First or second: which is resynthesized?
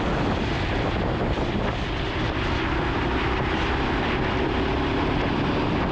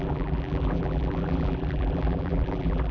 second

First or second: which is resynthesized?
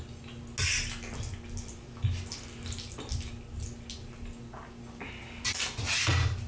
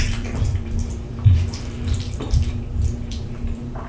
second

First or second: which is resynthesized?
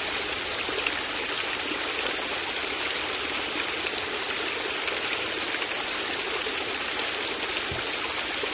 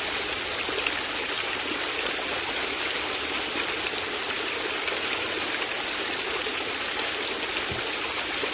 first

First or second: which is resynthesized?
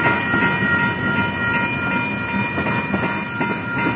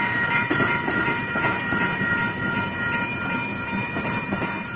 second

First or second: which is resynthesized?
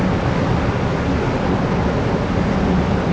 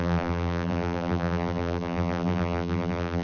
second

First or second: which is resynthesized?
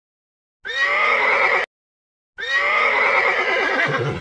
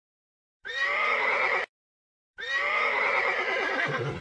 second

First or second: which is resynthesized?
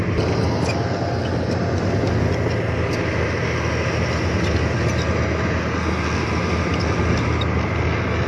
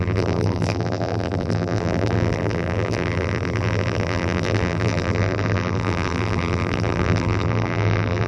second